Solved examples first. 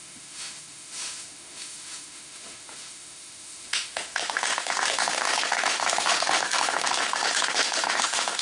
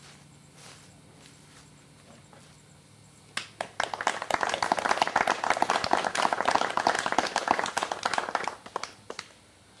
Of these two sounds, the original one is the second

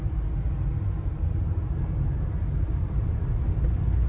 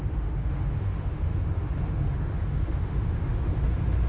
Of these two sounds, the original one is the first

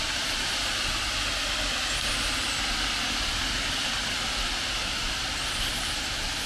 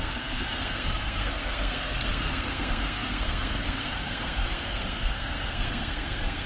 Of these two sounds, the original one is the first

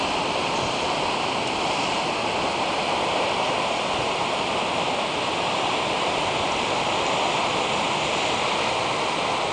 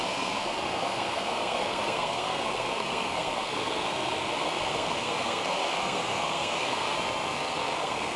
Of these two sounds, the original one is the first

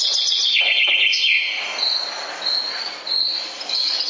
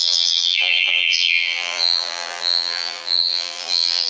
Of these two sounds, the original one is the first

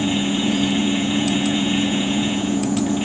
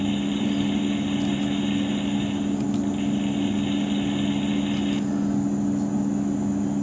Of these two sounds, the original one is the second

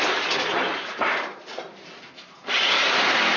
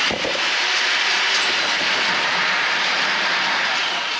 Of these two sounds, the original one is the first